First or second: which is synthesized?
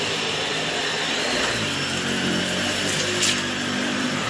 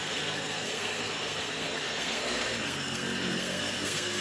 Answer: second